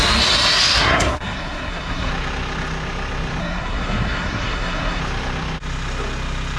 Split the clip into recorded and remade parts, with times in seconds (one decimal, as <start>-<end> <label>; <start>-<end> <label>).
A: 0.0-0.7 recorded; 0.7-2.1 remade; 2.1-3.4 recorded; 3.4-5.0 remade; 5.0-6.6 recorded

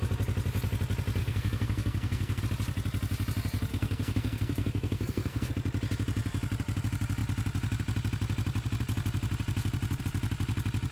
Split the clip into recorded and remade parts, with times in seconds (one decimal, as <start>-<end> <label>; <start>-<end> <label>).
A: 0.0-1.2 recorded; 1.2-2.4 remade; 2.4-3.7 recorded; 3.7-5.5 remade; 5.5-10.9 recorded

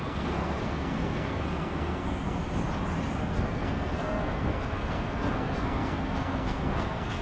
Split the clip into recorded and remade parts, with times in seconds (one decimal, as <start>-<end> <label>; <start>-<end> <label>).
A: 0.0-2.4 remade; 2.4-3.2 recorded; 3.2-7.2 remade

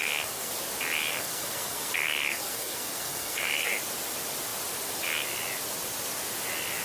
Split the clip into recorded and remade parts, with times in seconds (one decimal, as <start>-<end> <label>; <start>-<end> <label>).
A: 0.0-0.5 remade; 0.5-1.1 recorded; 1.1-3.8 remade; 3.8-6.8 recorded